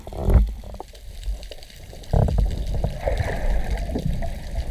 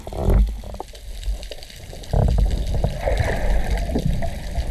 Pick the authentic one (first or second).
second